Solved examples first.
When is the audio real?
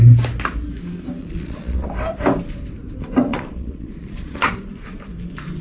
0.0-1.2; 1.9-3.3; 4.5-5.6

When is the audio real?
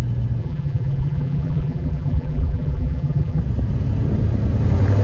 0.0-0.4; 3.4-5.0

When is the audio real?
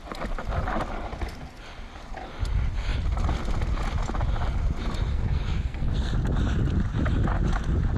0.0-5.1; 6.1-8.0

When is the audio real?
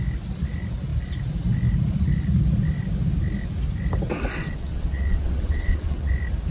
0.0-4.4; 6.1-6.5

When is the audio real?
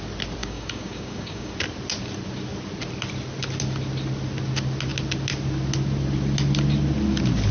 0.0-0.4; 1.5-7.5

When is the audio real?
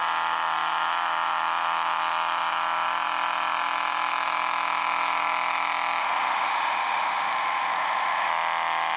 0.0-6.0; 8.3-9.0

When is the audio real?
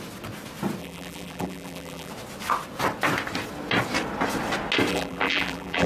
0.0-0.8; 2.1-4.9